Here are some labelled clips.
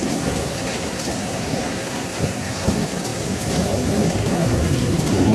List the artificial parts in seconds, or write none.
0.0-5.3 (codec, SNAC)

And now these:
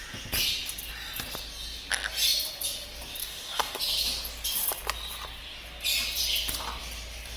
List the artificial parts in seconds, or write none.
3.2-3.8 (codec, DAC)

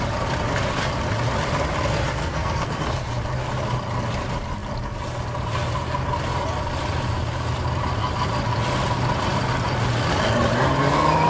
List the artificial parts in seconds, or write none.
2.2-2.8 (codec, SNAC)

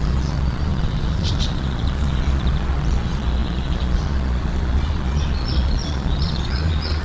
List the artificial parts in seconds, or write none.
0.0-7.0 (vocoder, Vocos)

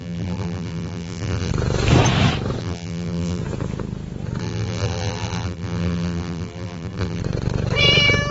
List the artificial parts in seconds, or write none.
0.0-1.5 (vocoder, BigVGAN v2); 2.6-3.4; 4.4-7.2